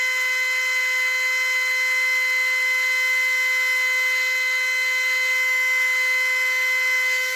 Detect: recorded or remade recorded